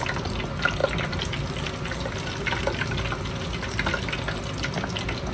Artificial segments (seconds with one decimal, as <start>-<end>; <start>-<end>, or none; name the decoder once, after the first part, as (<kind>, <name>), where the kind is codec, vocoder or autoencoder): none